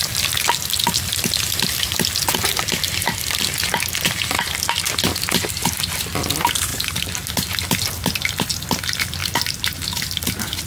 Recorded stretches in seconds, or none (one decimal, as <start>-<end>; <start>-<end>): 0.0-10.7